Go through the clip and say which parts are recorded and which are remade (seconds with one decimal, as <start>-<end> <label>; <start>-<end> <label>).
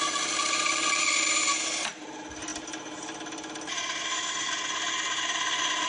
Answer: 0.0-5.9 recorded